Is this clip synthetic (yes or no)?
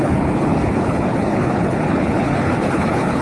yes